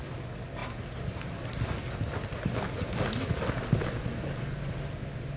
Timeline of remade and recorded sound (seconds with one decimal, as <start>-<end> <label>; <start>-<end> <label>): 0.0-5.4 recorded